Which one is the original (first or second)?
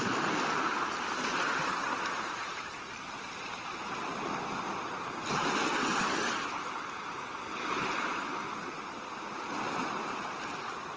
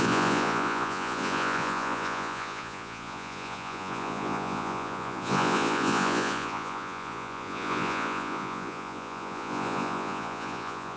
first